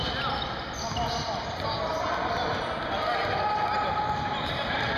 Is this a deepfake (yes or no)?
no